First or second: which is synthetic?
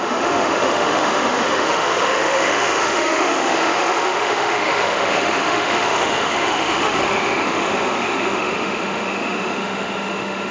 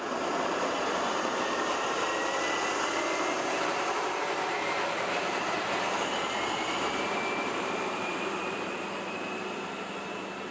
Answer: first